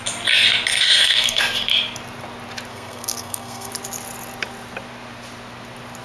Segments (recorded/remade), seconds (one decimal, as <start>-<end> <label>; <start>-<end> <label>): 0.0-0.7 recorded; 0.7-1.4 remade; 1.4-2.7 recorded; 2.7-3.7 remade; 3.7-6.0 recorded